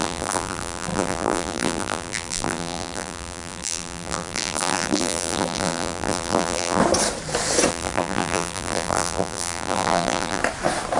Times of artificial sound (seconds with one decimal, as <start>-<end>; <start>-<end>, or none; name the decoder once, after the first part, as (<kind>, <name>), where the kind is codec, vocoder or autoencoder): 0.0-6.8 (vocoder, BigVGAN v2); 7.7-10.4